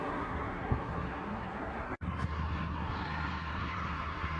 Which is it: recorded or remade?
remade